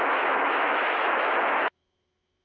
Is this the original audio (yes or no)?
no